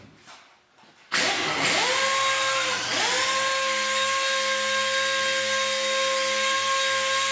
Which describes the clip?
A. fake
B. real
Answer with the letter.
B